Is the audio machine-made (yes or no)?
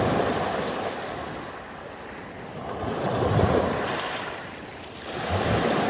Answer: yes